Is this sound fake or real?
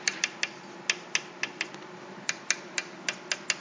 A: real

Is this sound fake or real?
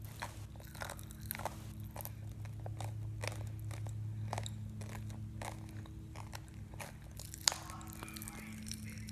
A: real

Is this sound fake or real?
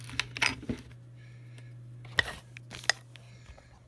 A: real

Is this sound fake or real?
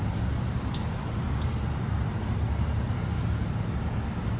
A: real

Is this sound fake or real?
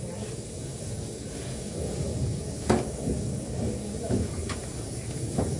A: fake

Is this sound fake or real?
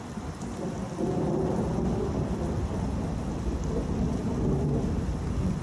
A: real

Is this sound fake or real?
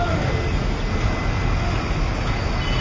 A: real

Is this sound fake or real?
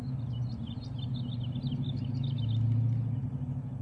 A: real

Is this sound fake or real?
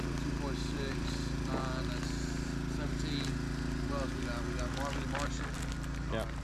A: real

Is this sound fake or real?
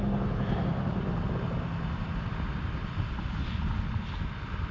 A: real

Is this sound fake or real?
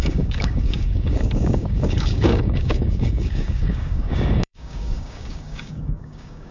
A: fake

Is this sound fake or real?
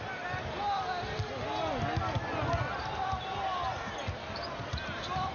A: real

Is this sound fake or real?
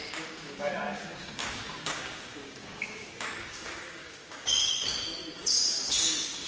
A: fake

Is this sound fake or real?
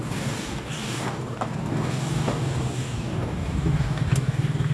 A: fake